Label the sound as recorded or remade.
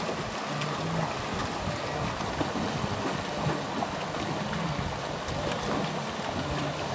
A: recorded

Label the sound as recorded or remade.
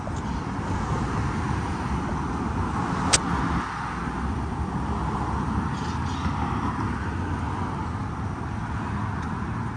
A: recorded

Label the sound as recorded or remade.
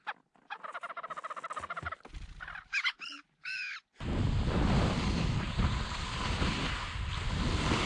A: recorded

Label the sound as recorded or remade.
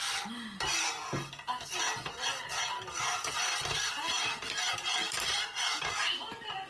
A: recorded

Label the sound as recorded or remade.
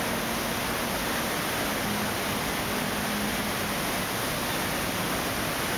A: recorded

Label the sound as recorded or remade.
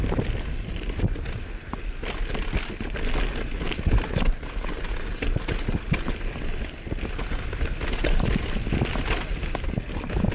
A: recorded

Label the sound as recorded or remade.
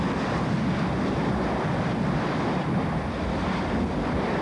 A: recorded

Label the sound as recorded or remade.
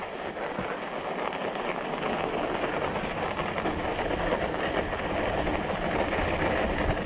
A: recorded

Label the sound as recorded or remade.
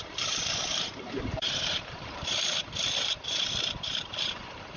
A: remade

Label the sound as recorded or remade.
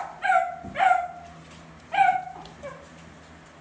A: recorded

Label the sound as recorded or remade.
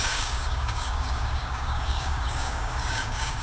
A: remade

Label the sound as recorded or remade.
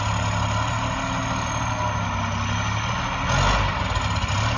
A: recorded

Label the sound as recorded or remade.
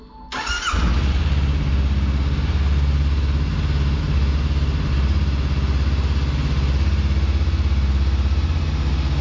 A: recorded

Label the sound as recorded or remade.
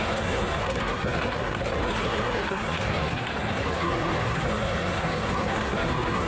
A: remade